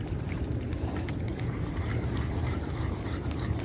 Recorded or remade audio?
remade